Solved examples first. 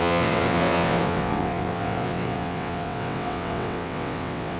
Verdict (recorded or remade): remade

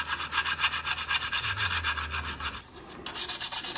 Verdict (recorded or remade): recorded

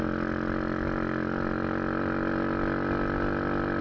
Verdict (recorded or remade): recorded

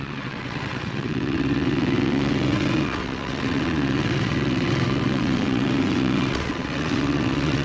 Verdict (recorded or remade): remade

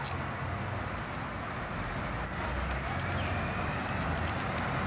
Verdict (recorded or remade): recorded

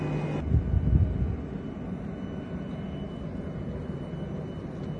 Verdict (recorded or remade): recorded